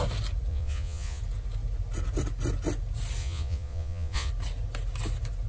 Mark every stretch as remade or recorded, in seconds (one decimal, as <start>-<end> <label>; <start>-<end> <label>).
0.0-0.5 recorded; 0.5-1.2 remade; 1.2-3.2 recorded; 3.2-4.3 remade; 4.3-5.5 recorded